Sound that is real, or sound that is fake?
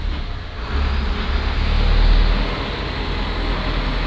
real